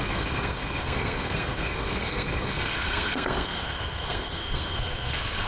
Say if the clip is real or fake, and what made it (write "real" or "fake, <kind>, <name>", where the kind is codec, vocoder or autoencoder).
fake, codec, SNAC